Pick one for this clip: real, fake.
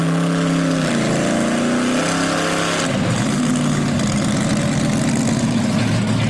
real